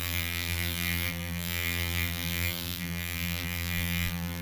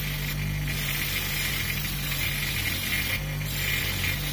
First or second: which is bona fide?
second